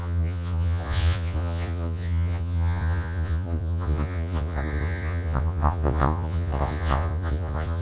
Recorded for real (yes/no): no